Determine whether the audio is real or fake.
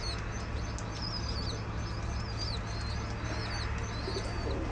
real